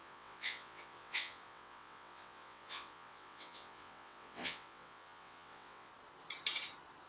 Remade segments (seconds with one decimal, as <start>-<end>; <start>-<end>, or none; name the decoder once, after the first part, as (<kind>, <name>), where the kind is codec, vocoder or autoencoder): 0.0-5.9 (vocoder, WaveNeXt)